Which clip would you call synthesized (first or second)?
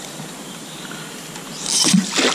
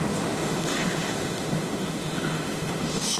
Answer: second